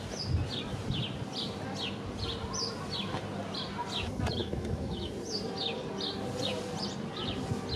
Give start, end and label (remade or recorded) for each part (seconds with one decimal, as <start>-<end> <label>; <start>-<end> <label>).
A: 0.0-4.4 recorded; 4.4-5.1 remade; 5.1-7.8 recorded